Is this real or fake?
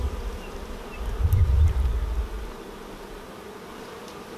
fake